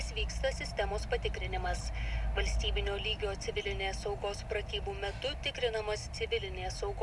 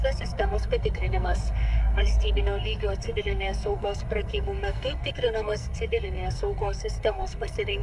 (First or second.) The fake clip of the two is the second